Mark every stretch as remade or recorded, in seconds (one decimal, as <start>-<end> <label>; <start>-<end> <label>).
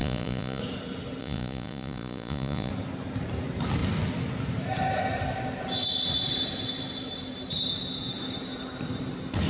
0.0-0.6 remade; 0.6-1.2 recorded; 1.2-2.7 remade; 2.7-9.5 recorded